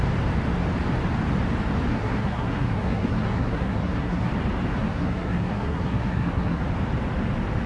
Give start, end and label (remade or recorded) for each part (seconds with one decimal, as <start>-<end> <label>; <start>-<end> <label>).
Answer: 0.0-1.9 recorded; 1.9-4.3 remade; 4.3-4.7 recorded; 4.7-6.6 remade; 6.6-7.7 recorded